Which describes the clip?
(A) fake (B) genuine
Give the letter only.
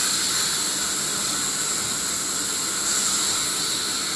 B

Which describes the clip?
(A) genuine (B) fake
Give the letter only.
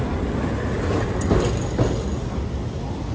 A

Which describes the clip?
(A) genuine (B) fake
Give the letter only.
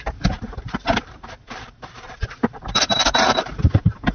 B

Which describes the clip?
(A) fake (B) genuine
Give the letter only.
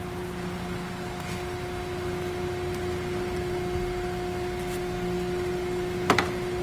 B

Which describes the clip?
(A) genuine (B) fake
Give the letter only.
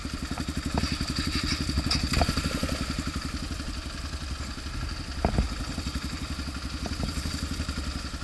A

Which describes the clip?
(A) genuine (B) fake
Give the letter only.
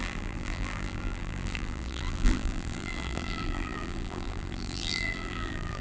B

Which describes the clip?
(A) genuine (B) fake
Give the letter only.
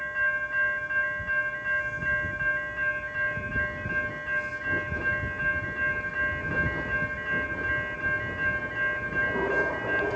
A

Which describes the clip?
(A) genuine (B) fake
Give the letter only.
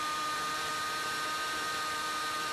B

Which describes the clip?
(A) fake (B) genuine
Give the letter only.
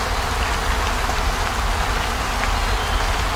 B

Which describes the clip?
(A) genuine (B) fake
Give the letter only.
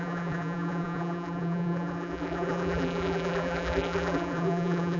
B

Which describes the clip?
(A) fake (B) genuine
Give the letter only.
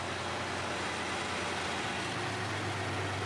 B